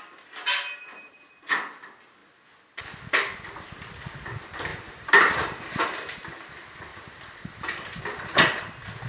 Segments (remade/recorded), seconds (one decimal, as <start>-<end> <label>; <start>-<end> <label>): 0.0-4.7 recorded; 4.7-5.8 remade; 5.8-6.9 recorded; 6.9-8.0 remade; 8.0-9.1 recorded